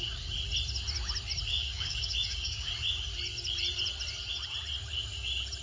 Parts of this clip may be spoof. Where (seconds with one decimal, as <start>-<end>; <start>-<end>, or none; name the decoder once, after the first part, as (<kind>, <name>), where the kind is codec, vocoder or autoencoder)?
1.5-2.7 (codec, DAC)